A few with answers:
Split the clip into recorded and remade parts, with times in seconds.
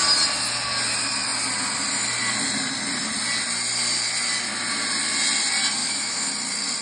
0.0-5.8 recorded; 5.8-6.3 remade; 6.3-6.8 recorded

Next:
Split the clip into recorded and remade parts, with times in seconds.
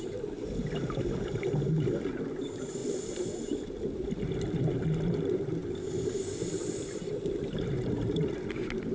0.0-8.9 recorded